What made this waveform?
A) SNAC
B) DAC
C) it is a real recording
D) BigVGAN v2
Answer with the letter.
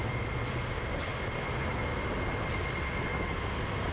C